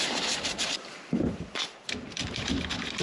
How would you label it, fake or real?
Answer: fake